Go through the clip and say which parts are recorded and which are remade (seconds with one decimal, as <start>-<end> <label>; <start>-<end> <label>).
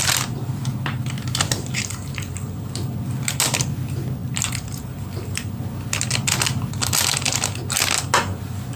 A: 0.0-8.8 recorded